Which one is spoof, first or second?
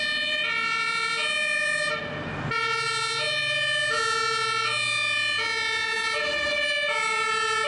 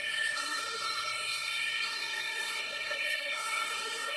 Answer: second